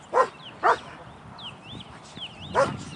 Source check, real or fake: real